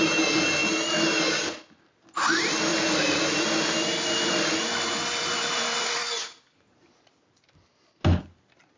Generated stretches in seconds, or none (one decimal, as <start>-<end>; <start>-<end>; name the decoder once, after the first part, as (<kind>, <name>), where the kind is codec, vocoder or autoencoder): 2.7-7.0 (vocoder, BigVGAN v2)